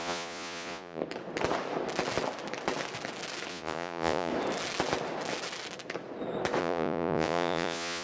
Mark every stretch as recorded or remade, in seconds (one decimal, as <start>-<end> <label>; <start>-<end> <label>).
0.0-1.0 remade; 1.0-3.5 recorded; 3.5-4.3 remade; 4.3-6.6 recorded; 6.6-8.0 remade